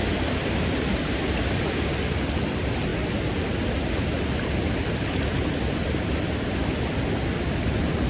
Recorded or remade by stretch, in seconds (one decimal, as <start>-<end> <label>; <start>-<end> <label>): 0.0-8.1 recorded